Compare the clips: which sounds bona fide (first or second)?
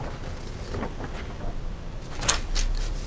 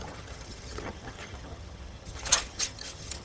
first